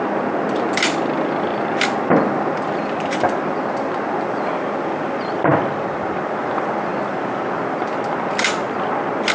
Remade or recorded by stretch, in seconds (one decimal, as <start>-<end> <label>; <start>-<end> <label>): 0.0-9.3 recorded